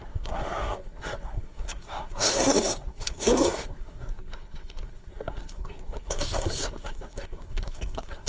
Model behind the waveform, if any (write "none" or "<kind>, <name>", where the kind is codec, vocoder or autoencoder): codec, SNAC